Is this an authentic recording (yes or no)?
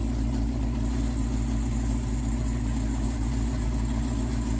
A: yes